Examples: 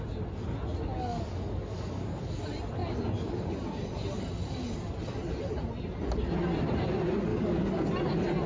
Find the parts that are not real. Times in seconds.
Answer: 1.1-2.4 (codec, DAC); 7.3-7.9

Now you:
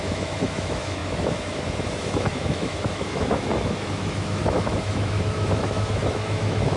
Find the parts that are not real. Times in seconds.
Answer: 0.0-6.8 (autoencoder, DAC-VAE)

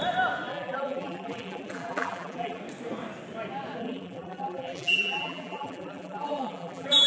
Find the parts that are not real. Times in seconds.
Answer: 0.5-2.6 (vocoder, BigVGAN v2); 3.8-7.1

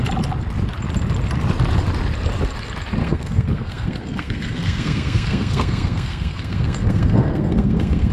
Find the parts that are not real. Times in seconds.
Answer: 3.0-8.1 (codec, SNAC)